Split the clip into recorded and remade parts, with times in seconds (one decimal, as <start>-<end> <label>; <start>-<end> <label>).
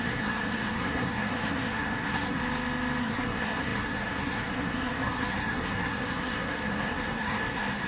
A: 0.0-2.4 remade; 2.4-3.0 recorded; 3.0-7.9 remade